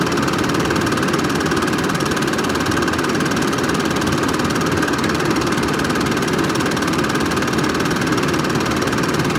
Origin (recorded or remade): remade